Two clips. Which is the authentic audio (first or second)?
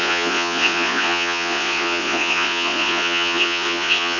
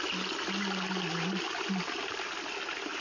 second